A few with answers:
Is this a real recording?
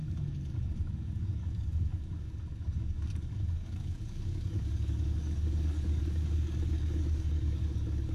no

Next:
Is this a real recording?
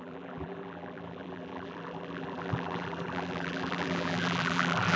no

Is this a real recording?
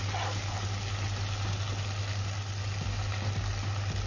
yes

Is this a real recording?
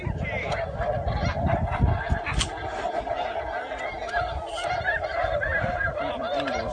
no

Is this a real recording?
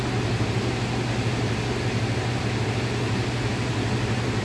yes